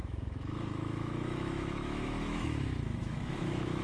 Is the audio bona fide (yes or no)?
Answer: no